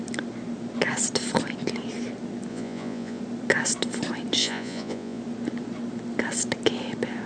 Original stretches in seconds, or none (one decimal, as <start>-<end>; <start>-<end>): 0.0-2.5; 3.2-4.4; 5.2-7.3